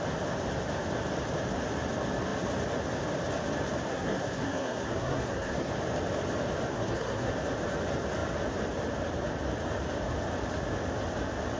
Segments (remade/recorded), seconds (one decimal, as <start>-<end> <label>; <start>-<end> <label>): 0.0-3.9 recorded; 3.9-5.7 remade; 5.7-6.7 recorded; 6.7-7.3 remade; 7.3-11.6 recorded